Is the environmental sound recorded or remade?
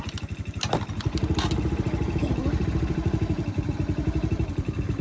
remade